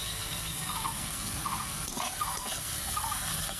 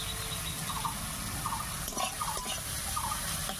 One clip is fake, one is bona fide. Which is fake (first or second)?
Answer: first